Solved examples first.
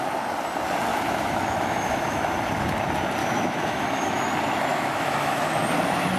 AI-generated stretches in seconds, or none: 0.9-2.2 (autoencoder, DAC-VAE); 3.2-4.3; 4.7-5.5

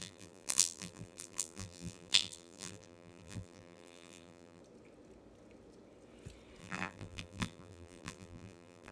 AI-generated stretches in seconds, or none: 0.0-4.6 (vocoder, BigVGAN v2); 6.6-8.9

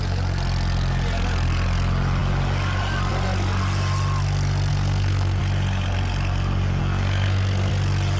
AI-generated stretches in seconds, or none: 4.7-5.4 (codec, SNAC); 6.8-7.7

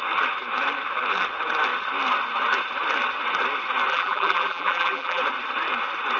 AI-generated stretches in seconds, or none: 3.9-5.2 (vocoder, BigVGAN v2)

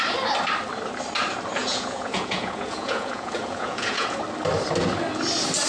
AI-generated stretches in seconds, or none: 1.6-4.2 (vocoder, Vocos)

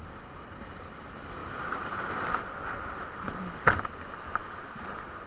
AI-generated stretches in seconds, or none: none

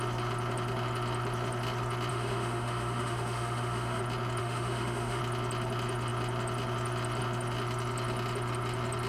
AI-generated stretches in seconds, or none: 2.1-4.0 (autoencoder, DAC-VAE); 4.4-5.2

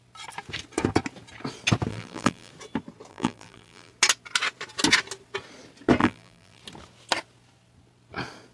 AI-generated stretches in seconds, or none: 1.9-2.5 (vocoder, BigVGAN v2); 3.1-3.9; 6.0-6.6